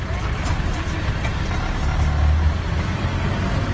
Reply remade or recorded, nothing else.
recorded